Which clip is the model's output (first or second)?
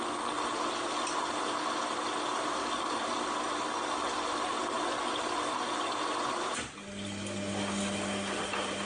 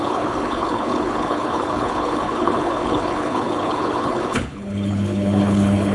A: second